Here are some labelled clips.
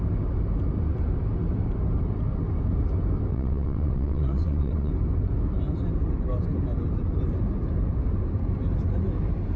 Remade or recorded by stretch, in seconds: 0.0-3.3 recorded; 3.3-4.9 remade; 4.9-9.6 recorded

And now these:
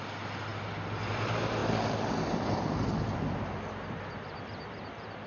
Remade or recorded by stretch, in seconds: 0.0-5.3 recorded

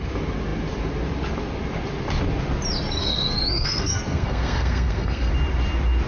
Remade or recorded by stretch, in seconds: 0.0-3.0 recorded; 3.0-5.3 remade; 5.3-6.1 recorded

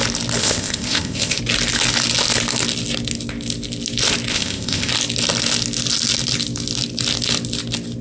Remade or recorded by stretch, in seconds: 0.0-0.4 recorded; 0.4-1.4 remade; 1.4-4.3 recorded; 4.3-4.9 remade; 4.9-8.0 recorded